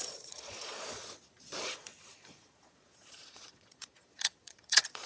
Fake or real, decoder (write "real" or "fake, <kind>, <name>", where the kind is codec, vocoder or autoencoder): fake, vocoder, Vocos